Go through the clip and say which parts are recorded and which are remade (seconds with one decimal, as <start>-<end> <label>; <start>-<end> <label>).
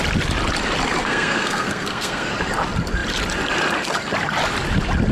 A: 0.0-1.0 recorded; 1.0-2.3 remade; 2.3-5.1 recorded